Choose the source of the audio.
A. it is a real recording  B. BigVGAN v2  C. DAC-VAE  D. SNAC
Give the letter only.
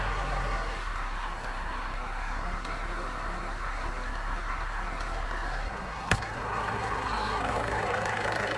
D